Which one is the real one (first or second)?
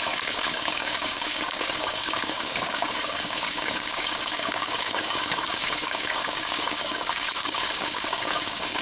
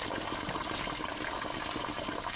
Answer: second